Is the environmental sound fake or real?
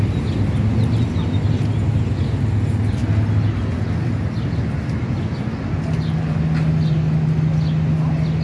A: real